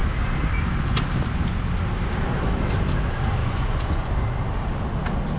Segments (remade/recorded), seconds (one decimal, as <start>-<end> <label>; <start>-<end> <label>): 0.0-3.4 recorded; 3.4-4.1 remade; 4.1-5.4 recorded